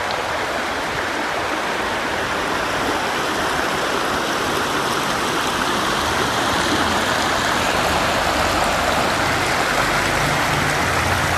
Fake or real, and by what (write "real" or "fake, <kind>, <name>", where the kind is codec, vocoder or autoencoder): real